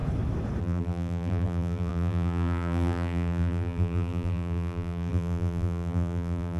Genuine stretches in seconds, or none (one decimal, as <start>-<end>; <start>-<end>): 0.0-0.6